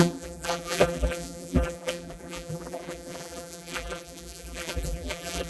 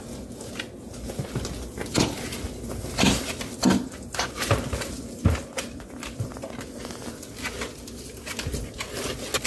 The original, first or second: second